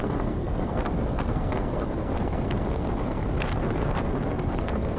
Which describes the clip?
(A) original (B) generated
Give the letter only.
B